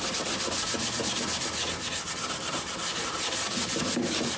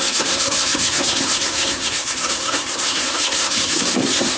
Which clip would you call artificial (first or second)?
second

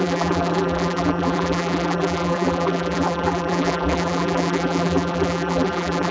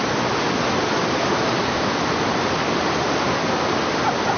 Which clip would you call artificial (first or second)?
first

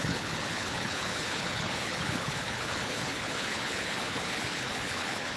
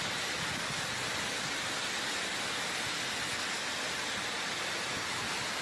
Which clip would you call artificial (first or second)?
first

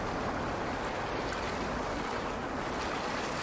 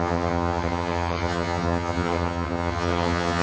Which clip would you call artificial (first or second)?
second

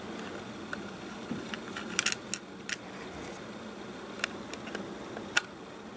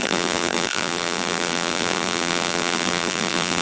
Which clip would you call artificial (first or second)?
second